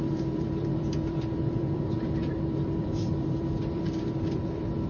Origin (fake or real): fake